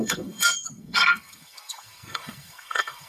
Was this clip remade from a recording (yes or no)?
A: yes